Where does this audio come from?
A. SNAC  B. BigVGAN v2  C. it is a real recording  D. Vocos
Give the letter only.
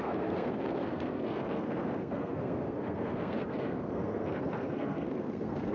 A